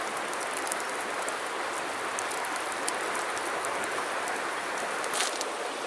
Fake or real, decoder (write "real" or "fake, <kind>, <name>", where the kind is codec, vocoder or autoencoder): real